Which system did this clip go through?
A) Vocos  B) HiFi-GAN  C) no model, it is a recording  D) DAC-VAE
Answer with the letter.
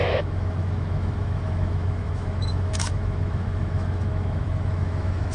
D